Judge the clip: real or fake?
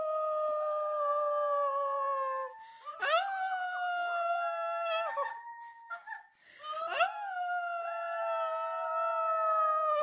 real